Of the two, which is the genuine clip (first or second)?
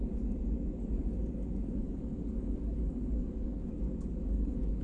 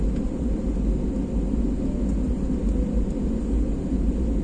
second